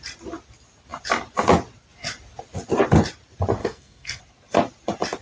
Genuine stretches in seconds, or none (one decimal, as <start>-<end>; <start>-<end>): 0.0-3.6; 4.2-5.2